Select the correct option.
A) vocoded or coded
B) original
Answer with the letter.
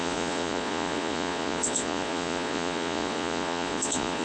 A